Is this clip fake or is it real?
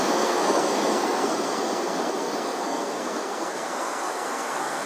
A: fake